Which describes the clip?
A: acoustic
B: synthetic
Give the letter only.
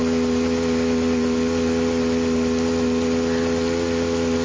A